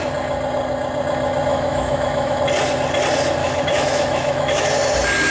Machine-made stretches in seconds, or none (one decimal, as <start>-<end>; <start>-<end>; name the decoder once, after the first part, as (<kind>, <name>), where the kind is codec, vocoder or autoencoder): 1.5-2.4 (autoencoder, DAC-VAE); 3.4-4.8